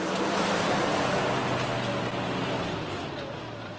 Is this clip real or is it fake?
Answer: real